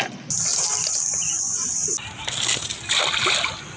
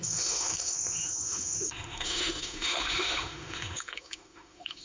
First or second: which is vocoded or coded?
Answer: second